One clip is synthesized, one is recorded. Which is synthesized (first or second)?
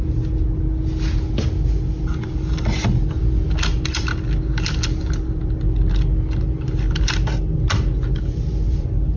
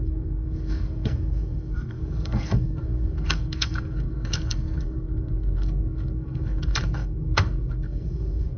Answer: second